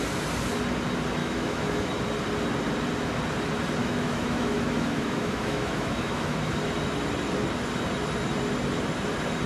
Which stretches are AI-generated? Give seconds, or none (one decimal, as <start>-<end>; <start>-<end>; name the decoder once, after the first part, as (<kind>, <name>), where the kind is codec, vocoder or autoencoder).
1.2-1.9 (autoencoder, DAC-VAE); 3.8-6.5